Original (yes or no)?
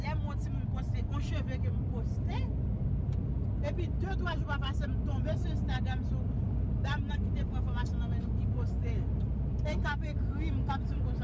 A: yes